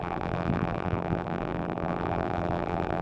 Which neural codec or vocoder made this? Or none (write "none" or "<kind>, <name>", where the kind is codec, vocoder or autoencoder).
vocoder, BigVGAN v2